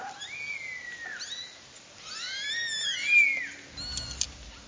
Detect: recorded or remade recorded